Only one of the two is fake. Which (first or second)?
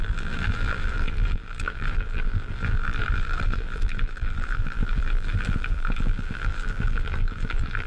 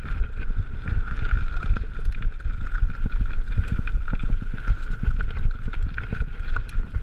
first